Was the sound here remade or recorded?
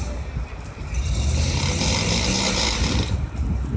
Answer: recorded